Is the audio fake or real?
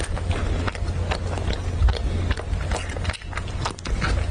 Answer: real